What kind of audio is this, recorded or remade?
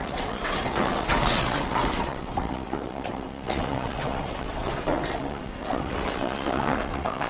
remade